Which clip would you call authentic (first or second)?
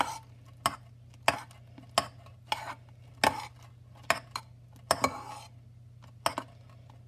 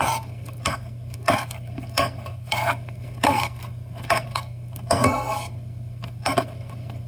first